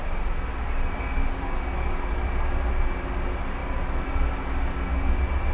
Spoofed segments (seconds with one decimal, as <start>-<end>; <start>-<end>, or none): none